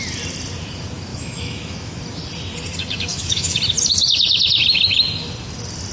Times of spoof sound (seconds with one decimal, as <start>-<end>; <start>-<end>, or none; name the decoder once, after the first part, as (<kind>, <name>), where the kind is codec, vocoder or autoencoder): 1.1-2.0 (autoencoder, DAC-VAE); 3.1-3.6

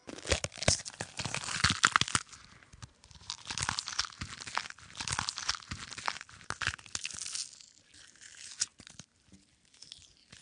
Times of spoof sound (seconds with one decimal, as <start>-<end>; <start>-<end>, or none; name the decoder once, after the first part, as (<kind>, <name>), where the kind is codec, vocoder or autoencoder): none

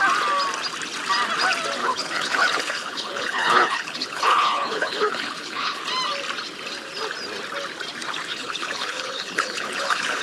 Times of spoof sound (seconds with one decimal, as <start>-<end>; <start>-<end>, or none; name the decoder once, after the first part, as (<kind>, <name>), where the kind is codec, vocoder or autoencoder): 1.8-5.8 (codec, HILCodec); 8.3-10.2

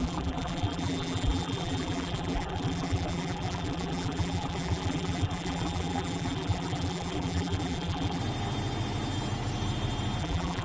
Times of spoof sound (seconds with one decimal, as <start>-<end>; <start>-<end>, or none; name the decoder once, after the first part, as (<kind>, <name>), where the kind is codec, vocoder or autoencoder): 0.0-8.2 (vocoder, BigVGAN v2); 10.2-10.6

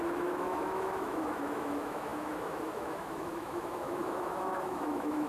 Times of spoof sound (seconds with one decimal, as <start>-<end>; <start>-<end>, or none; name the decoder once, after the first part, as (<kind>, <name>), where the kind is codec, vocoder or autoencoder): 0.0-5.3 (autoencoder, DAC-VAE)

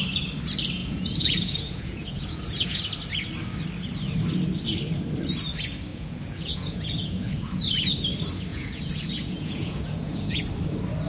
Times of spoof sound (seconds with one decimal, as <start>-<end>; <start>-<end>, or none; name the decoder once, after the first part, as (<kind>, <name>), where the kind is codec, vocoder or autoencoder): 0.8-2.8 (vocoder, Vocos); 5.9-7.6; 8.5-10.4